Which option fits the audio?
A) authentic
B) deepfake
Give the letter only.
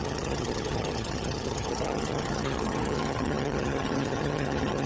B